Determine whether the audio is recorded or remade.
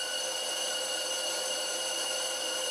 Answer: recorded